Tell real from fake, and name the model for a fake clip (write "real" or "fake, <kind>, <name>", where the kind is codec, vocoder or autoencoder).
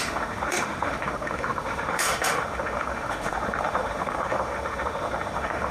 fake, autoencoder, DAC-VAE